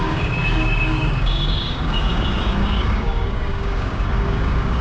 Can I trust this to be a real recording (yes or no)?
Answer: no